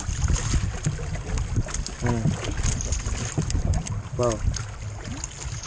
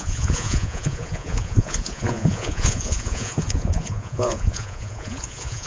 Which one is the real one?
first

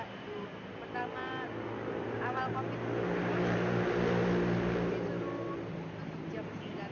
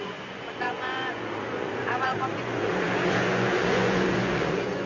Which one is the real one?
first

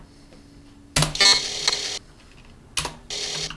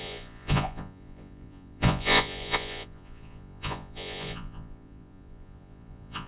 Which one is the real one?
first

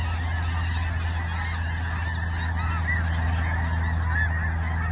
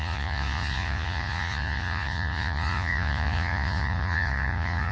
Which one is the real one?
first